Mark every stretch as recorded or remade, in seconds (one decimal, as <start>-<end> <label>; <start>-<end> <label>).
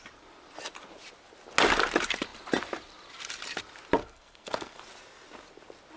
0.0-4.0 recorded; 4.0-4.8 remade; 4.8-6.0 recorded